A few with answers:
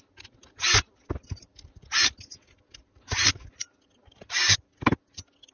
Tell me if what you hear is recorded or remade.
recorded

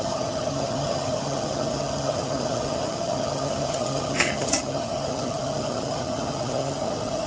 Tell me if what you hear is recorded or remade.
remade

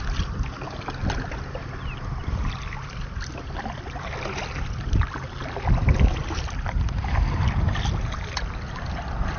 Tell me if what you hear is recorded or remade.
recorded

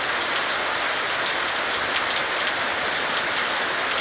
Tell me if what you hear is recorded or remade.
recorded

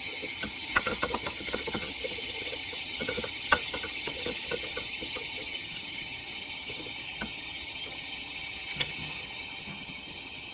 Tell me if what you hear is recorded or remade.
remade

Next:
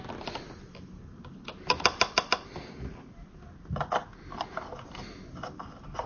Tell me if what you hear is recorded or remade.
recorded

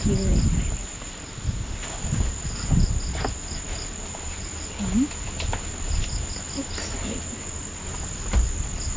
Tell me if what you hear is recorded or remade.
recorded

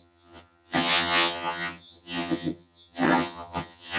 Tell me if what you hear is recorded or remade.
remade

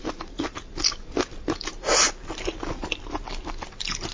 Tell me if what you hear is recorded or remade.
recorded